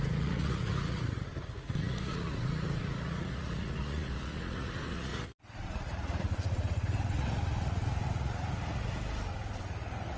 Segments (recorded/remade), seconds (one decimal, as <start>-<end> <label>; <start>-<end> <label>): 0.0-9.0 remade; 9.0-9.7 recorded; 9.7-10.2 remade